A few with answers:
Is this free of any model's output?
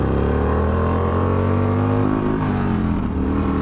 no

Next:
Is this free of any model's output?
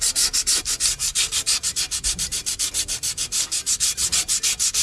no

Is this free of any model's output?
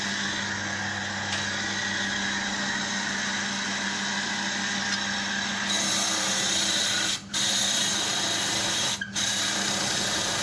yes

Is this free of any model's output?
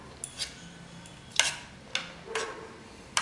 yes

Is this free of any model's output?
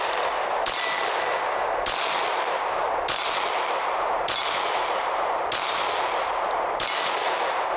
yes